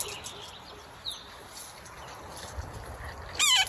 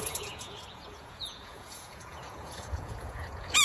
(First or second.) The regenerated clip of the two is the second